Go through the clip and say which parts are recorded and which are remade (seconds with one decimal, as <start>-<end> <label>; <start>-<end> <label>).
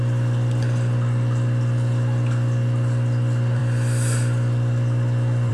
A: 0.0-5.5 recorded